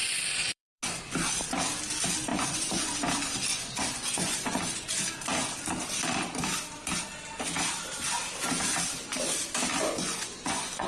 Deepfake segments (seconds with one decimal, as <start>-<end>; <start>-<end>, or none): 0.0-0.8; 2.3-3.0; 3.5-5.0; 9.7-10.9